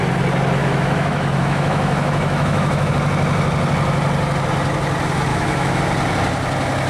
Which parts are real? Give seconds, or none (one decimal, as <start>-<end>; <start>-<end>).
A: 0.0-0.6; 2.9-5.3; 5.8-6.9